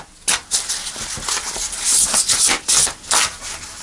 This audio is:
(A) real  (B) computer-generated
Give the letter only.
A